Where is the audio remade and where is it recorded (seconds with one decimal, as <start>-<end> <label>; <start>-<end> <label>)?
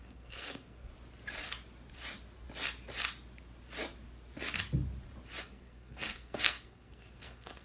0.0-0.9 remade; 0.9-5.4 recorded; 5.4-7.6 remade